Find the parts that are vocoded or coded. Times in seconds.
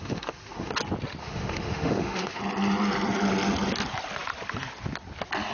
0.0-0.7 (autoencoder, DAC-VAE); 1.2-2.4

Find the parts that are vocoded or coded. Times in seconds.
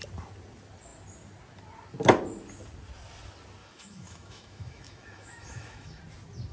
3.6-6.0 (autoencoder, DAC-VAE)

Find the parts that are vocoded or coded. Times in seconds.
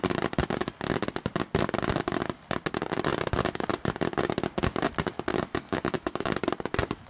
5.3-6.3 (autoencoder, DAC-VAE)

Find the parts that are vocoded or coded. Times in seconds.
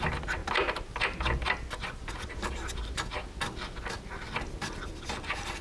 none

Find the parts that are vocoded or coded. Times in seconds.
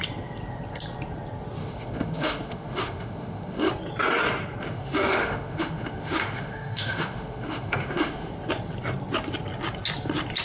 1.6-3.7 (autoencoder, DAC-VAE); 4.6-8.3